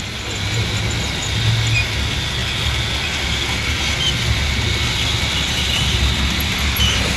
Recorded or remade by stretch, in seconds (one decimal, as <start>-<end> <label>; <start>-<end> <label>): 0.0-7.2 recorded